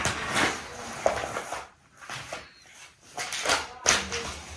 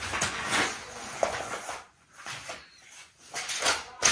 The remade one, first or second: second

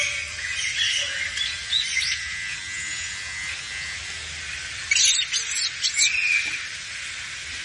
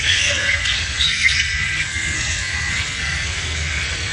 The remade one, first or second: second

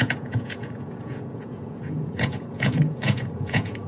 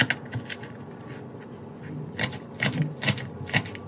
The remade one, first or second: first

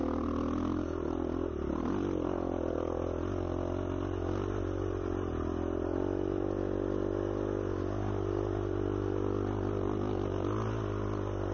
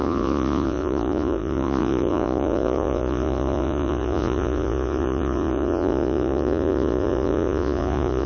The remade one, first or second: second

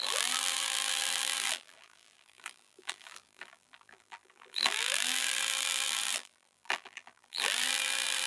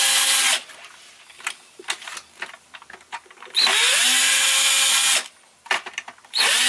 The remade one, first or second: first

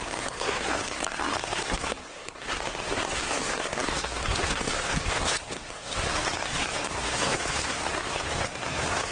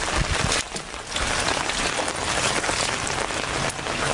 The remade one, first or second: first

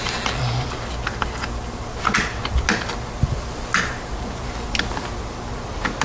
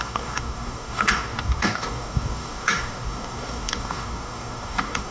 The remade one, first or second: second